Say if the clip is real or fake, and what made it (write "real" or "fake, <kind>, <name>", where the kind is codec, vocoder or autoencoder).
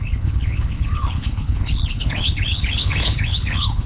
fake, codec, HILCodec